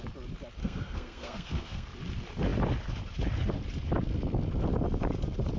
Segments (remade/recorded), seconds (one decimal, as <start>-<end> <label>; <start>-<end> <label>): 0.0-0.6 recorded; 0.6-1.9 remade; 1.9-5.6 recorded